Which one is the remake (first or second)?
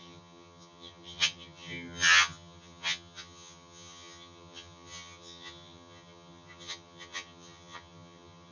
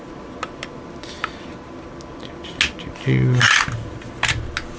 first